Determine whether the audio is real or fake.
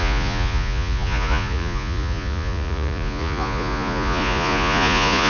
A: fake